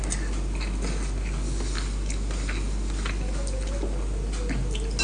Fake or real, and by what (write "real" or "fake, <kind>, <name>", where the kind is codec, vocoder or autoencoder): real